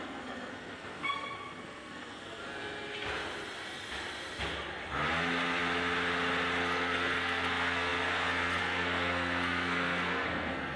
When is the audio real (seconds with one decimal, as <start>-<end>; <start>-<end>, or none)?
2.4-6.6